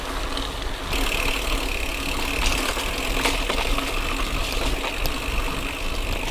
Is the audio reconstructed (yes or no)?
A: no